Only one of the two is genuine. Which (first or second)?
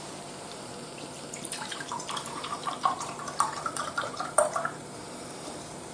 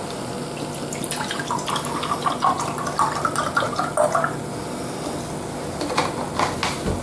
second